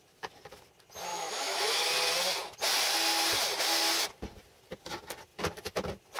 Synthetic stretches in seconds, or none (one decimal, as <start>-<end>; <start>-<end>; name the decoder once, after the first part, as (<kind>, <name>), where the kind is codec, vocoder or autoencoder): 1.1-1.9 (autoencoder, DAC-VAE)